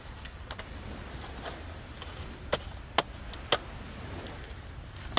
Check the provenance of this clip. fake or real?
real